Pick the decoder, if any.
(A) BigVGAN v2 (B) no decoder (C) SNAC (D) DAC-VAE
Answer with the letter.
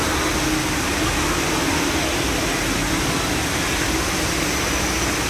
B